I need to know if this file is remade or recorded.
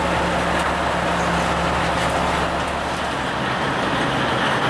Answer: recorded